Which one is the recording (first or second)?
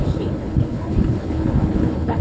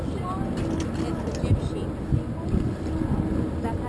second